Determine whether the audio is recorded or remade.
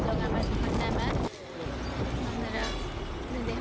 recorded